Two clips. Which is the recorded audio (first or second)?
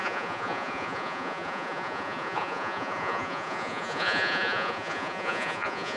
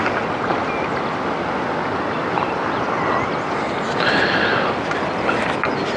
second